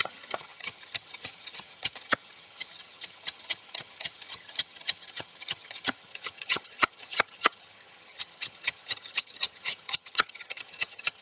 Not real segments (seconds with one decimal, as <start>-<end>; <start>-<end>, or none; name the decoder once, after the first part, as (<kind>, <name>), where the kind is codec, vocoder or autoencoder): 0.0-11.2 (vocoder, HiFi-GAN)